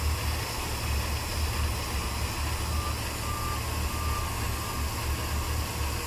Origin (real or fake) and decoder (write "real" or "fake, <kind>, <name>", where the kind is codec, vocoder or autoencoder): real